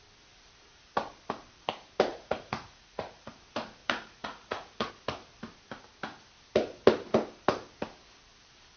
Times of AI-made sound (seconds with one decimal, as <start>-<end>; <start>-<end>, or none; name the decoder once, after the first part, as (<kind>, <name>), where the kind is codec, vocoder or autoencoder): 2.1-3.3 (vocoder, Vocos); 3.8-4.9